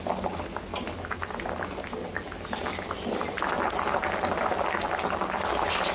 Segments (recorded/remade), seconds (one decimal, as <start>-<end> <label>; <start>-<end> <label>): 0.0-5.9 recorded